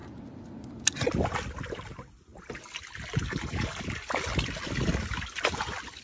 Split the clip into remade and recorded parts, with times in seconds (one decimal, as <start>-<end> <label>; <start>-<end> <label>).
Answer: 0.0-6.0 recorded